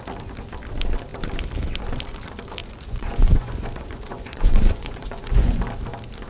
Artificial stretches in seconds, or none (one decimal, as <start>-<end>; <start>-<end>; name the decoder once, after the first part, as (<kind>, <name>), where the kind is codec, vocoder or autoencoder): 2.6-5.6 (vocoder, Vocos)